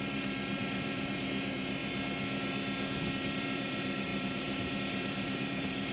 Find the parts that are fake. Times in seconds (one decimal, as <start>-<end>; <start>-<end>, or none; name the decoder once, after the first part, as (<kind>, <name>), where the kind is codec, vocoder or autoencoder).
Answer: 0.0-1.8 (vocoder, BigVGAN v2); 3.2-5.9